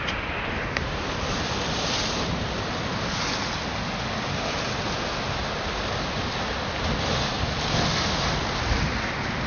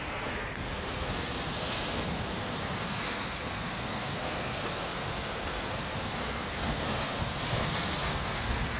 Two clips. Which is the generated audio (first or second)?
second